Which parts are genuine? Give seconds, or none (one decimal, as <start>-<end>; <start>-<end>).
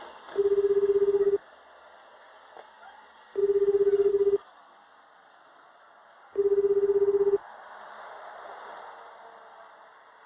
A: 0.0-10.3